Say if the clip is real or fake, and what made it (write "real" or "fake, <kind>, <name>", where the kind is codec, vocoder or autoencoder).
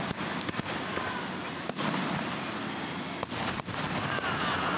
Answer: fake, vocoder, BigVGAN v2